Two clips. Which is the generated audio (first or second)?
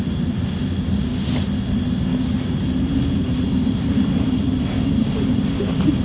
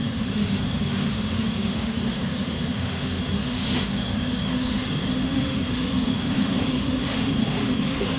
second